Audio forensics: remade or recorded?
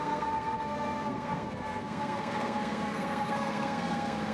remade